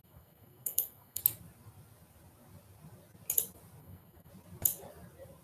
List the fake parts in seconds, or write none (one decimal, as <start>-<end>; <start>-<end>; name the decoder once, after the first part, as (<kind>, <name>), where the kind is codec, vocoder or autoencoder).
0.0-1.2 (codec, SNAC); 3.8-4.3